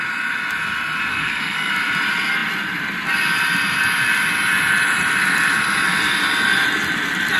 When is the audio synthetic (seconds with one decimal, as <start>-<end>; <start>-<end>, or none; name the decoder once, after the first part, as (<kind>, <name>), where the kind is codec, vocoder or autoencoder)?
1.1-1.7 (codec, SNAC)